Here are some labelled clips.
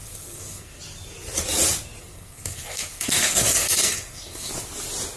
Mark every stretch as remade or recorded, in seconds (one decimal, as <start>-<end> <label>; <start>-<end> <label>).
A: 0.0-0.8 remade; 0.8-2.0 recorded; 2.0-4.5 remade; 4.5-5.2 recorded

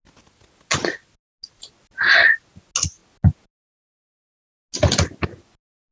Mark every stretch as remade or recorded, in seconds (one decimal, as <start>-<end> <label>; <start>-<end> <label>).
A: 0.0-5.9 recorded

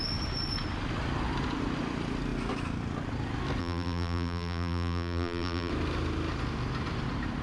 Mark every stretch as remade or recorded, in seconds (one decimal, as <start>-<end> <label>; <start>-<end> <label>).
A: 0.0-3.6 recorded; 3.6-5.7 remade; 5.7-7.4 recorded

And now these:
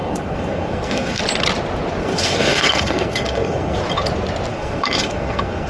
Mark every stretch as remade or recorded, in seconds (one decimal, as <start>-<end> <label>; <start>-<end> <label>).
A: 0.0-1.2 remade; 1.2-2.0 recorded; 2.0-3.8 remade; 3.8-4.5 recorded; 4.5-5.7 remade

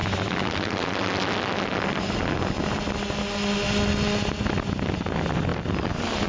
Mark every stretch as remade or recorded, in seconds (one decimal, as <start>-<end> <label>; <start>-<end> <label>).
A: 0.0-6.3 recorded